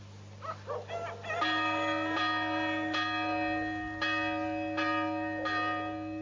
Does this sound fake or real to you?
real